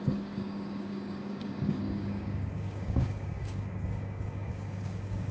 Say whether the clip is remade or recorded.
remade